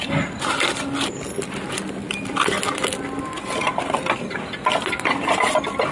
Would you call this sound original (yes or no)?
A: yes